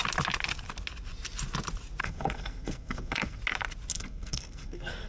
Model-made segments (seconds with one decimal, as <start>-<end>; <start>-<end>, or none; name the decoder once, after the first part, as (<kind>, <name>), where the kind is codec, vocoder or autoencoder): 2.0-3.4 (codec, SNAC); 3.9-5.1